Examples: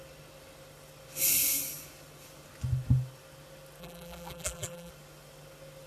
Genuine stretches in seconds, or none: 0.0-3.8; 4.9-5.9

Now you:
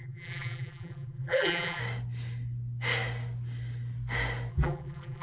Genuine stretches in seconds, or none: 1.8-4.5

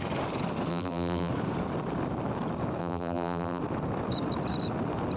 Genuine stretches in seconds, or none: 0.0-0.7; 1.3-2.8; 3.6-5.2

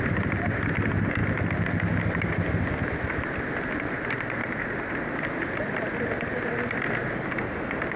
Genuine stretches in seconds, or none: 0.0-4.4; 5.1-8.0